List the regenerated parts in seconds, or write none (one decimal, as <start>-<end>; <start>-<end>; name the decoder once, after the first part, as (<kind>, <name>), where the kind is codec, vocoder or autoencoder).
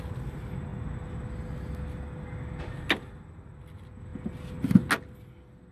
none